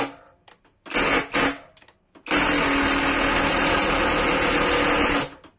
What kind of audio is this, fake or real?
real